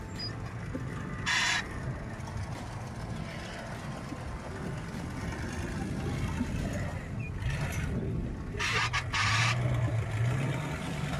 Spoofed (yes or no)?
no